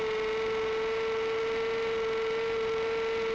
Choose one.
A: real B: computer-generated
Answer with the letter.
A